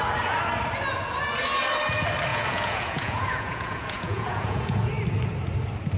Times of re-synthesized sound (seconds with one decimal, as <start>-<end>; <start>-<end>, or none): 2.3-4.9